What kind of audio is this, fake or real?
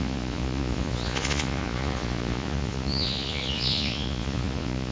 fake